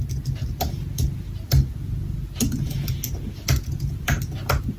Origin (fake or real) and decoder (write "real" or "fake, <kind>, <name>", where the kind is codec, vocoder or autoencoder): real